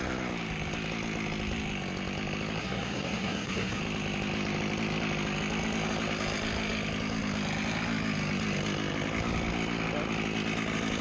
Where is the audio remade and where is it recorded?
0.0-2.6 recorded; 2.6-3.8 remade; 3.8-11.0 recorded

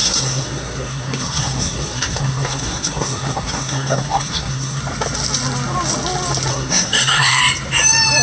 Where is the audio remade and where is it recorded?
0.0-4.8 remade; 4.8-6.5 recorded; 6.5-7.4 remade; 7.4-8.2 recorded

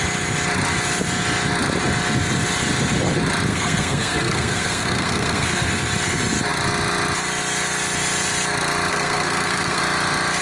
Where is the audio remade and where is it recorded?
0.0-3.5 recorded; 3.5-5.7 remade; 5.7-8.9 recorded; 8.9-9.8 remade; 9.8-10.4 recorded

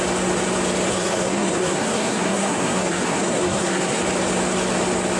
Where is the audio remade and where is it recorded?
0.0-0.9 recorded; 0.9-4.0 remade; 4.0-5.2 recorded